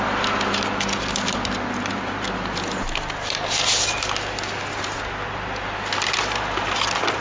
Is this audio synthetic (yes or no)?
no